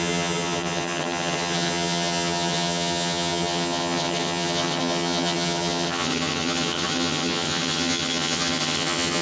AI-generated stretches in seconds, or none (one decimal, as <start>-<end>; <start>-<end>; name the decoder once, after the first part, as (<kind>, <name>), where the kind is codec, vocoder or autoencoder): 0.0-9.2 (vocoder, HiFi-GAN)